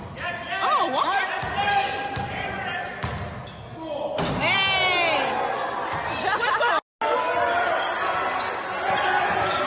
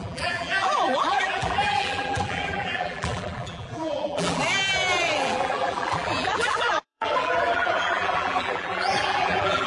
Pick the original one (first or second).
first